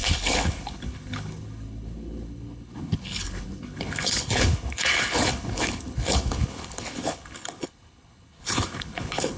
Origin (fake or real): fake